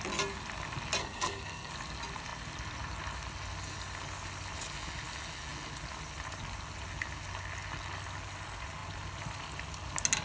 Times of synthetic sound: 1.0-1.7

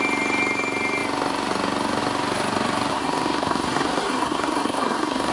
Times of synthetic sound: 2.9-5.3

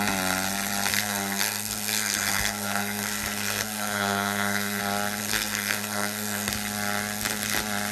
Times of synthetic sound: 0.9-4.8; 5.2-6.5

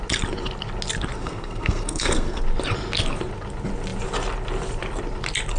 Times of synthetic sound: 1.2-2.4

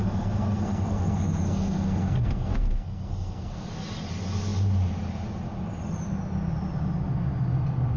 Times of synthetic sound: 0.0-3.7

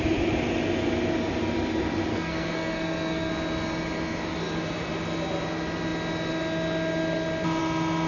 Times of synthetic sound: 2.1-3.3

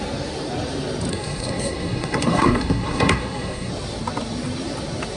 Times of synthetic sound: 1.1-3.7

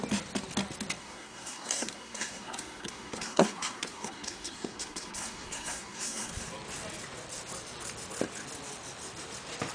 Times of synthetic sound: 1.0-6.3